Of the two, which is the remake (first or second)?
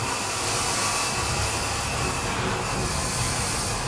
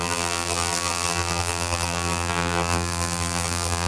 second